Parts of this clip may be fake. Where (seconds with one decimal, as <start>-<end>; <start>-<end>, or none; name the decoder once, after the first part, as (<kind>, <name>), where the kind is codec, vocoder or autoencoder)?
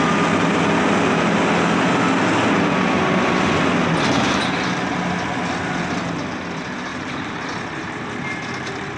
6.9-9.0 (vocoder, BigVGAN v2)